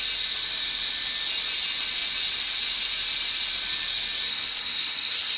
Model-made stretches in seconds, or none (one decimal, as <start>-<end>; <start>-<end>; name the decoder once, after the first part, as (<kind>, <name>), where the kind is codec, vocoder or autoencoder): 4.3-5.4 (codec, SNAC)

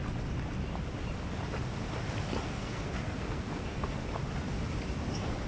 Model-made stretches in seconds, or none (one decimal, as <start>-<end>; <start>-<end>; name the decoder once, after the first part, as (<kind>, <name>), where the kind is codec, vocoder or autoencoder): 2.4-4.0 (codec, SNAC); 5.1-5.5

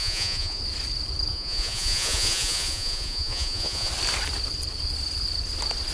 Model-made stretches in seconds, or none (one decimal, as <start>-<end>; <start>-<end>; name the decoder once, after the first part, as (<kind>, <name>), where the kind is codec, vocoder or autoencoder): 0.0-0.6 (vocoder, Vocos); 1.3-3.9

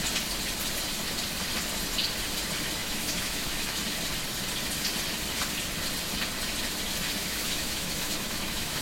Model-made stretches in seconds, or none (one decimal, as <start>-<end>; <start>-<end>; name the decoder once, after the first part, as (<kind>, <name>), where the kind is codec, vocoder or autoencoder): 2.8-3.8 (autoencoder, DAC-VAE); 7.2-8.8

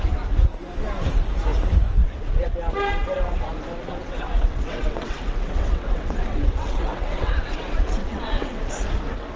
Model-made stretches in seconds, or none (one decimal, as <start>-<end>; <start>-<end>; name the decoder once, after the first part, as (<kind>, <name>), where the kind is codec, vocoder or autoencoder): 2.0-2.5 (vocoder, WaveNeXt); 4.0-7.6; 8.0-8.7

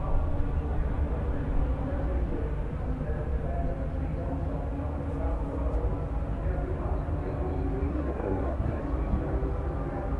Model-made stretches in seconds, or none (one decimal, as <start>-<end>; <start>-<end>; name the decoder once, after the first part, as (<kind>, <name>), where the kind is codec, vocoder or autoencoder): 7.9-8.8 (codec, SNAC)

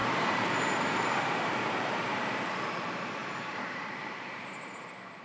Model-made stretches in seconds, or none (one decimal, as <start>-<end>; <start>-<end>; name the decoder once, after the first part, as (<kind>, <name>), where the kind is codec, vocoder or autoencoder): 0.0-5.2 (vocoder, BigVGAN v2)

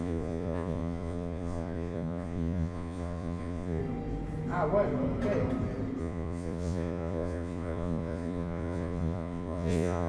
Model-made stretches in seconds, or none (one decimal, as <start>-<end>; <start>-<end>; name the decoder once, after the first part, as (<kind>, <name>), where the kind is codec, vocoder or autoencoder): 0.0-3.8 (vocoder, Vocos); 6.0-10.1